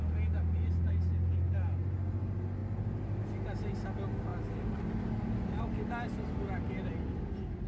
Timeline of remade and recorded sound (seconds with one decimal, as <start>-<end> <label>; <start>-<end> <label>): 0.0-7.7 recorded

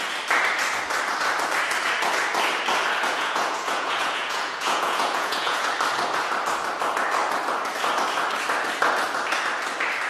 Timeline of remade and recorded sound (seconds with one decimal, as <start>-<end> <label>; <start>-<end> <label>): 0.0-3.1 recorded; 3.1-5.7 remade; 5.7-10.1 recorded